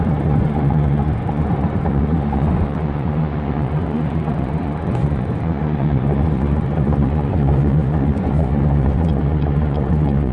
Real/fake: fake